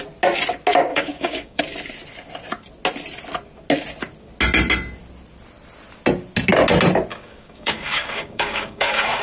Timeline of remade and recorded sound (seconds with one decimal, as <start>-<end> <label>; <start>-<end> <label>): 0.0-0.9 recorded; 0.9-1.6 remade; 1.6-7.1 recorded; 7.1-9.2 remade